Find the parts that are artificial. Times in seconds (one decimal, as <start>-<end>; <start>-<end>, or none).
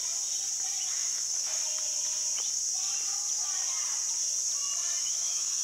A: 0.9-1.6; 5.0-5.6